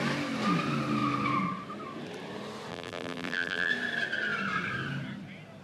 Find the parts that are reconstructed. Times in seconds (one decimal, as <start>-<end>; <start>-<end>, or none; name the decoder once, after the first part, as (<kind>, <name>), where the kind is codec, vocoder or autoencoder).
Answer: 2.7-3.7 (vocoder, BigVGAN v2)